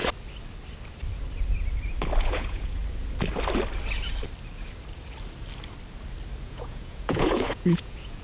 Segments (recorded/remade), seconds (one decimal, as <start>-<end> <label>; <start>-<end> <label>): 0.0-2.3 recorded; 2.3-2.8 remade; 2.8-6.4 recorded; 6.4-8.2 remade